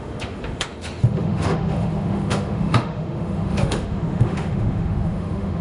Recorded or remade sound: remade